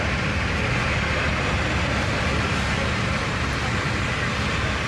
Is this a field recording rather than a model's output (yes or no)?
yes